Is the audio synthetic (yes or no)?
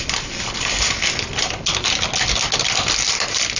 no